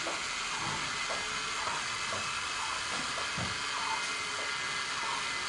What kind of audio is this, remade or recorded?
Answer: recorded